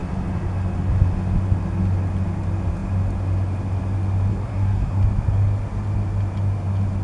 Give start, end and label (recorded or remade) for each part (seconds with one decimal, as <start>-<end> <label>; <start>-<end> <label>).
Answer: 0.0-4.3 recorded; 4.3-5.0 remade; 5.0-7.0 recorded

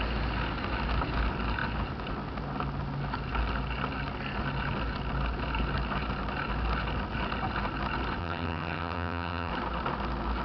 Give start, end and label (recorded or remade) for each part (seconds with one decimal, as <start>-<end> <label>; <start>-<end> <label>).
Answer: 0.0-8.2 recorded; 8.2-9.5 remade; 9.5-10.4 recorded